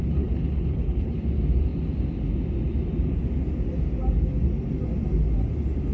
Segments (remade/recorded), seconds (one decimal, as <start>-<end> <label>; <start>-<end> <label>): 0.0-1.2 remade; 1.2-5.9 recorded